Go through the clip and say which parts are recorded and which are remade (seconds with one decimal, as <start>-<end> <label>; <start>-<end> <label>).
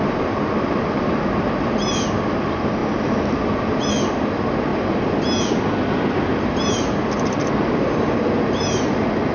0.0-9.3 recorded